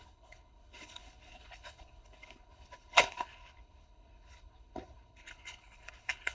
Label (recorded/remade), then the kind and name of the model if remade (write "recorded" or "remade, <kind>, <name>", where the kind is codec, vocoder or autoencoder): remade, codec, HILCodec